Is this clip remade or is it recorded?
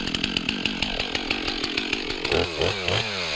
recorded